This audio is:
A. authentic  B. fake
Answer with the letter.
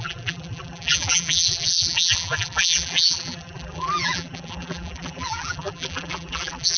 B